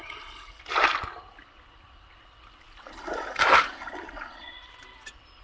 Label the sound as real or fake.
real